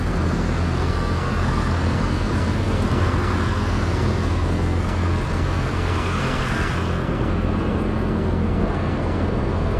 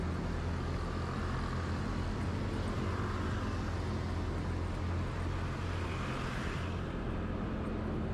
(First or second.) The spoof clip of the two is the first